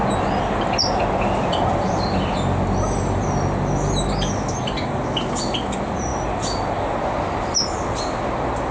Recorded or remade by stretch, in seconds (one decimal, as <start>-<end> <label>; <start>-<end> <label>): 0.0-8.7 recorded